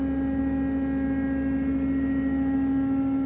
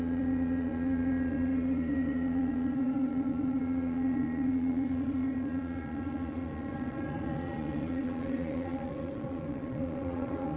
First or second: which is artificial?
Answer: second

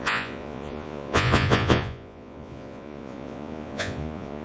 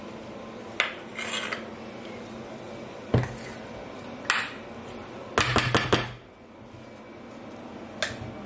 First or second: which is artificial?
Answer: first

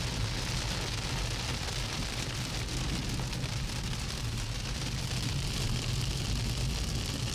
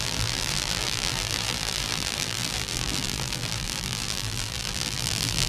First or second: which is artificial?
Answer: second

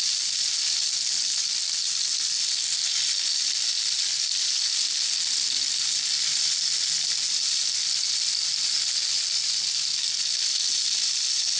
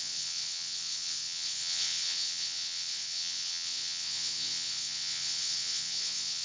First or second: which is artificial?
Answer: second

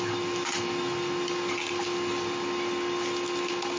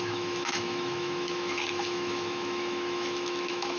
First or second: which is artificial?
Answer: second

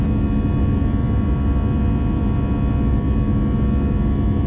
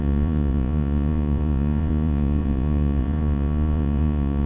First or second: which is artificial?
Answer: second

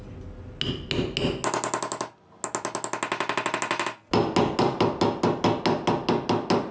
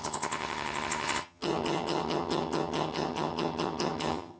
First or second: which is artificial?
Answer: second